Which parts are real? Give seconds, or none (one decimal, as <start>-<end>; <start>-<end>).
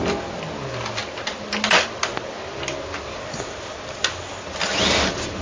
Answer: 0.0-5.4